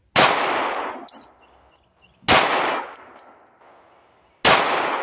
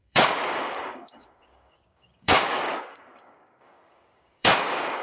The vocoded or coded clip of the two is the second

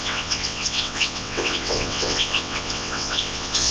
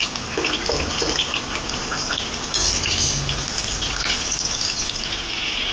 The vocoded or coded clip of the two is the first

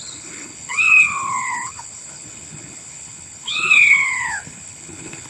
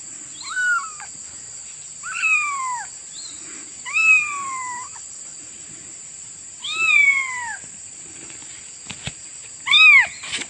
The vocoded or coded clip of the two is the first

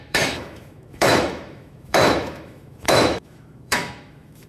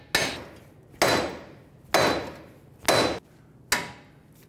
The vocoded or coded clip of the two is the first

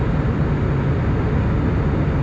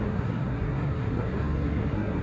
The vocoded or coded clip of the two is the second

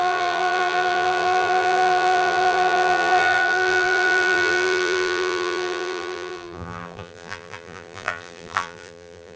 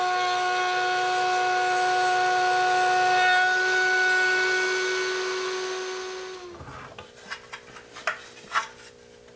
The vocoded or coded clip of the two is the first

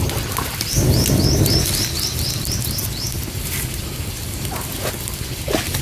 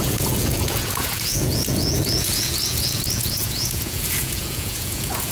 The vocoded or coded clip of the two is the second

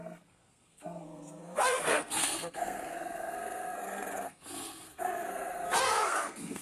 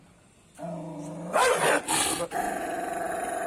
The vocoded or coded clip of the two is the first